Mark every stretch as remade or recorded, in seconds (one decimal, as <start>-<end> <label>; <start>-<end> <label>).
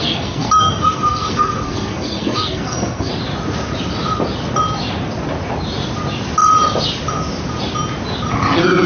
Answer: 0.0-3.1 remade; 3.1-8.9 recorded